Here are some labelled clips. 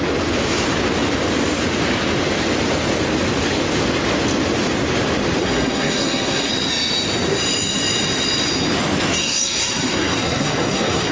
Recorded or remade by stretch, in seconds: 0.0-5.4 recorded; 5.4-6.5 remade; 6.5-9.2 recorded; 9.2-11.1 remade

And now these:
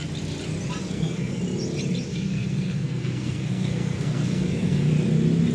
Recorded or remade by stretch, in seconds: 0.0-0.8 recorded; 0.8-1.4 remade; 1.4-2.1 recorded; 2.1-4.9 remade; 4.9-5.5 recorded

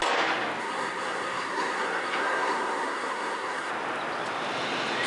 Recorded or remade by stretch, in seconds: 0.0-0.6 recorded; 0.6-3.7 remade; 3.7-5.1 recorded